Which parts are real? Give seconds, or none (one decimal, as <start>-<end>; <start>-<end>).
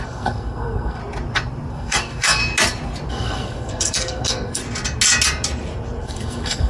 1.0-1.7; 2.4-3.1; 4.6-6.0